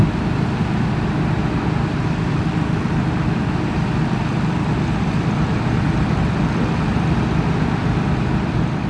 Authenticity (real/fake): fake